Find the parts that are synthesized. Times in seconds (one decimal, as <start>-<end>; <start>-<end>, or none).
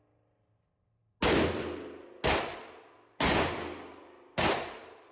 none